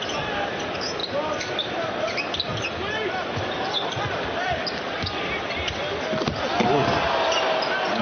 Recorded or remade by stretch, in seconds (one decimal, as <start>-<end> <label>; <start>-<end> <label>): 0.0-8.0 recorded